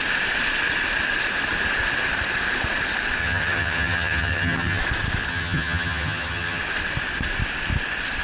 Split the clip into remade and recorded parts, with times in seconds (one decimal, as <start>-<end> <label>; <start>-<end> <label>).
0.0-3.2 recorded; 3.2-4.8 remade; 4.8-5.3 recorded; 5.3-6.6 remade; 6.6-8.2 recorded

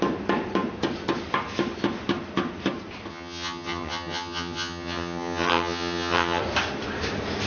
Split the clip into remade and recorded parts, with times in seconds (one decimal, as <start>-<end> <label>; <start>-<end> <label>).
0.0-3.1 recorded; 3.1-6.4 remade; 6.4-7.5 recorded

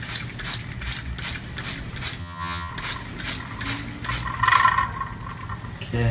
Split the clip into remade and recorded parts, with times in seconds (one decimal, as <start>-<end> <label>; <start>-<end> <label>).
0.0-2.2 recorded; 2.2-2.7 remade; 2.7-6.1 recorded